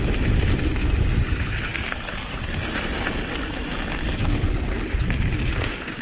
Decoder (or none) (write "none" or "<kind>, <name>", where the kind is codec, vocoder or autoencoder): none